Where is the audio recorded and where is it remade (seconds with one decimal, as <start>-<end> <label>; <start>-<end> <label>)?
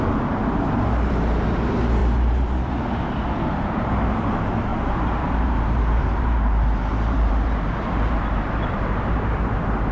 0.0-2.0 recorded; 2.0-2.7 remade; 2.7-4.7 recorded; 4.7-9.4 remade; 9.4-9.9 recorded